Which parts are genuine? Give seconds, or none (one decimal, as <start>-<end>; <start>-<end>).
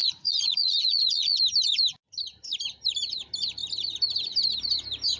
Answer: 1.4-5.2